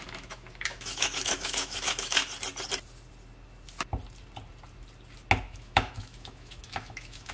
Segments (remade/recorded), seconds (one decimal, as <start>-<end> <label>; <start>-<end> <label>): 0.0-2.2 remade; 2.2-5.4 recorded; 5.4-7.3 remade

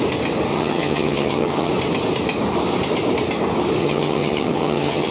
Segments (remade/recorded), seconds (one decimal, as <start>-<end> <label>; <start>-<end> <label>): 0.0-0.5 recorded; 0.5-1.7 remade; 1.7-3.8 recorded; 3.8-5.1 remade